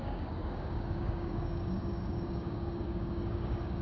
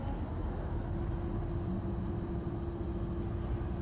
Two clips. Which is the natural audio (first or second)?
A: second